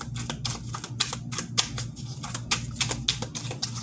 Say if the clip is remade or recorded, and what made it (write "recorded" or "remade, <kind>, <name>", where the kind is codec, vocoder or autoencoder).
recorded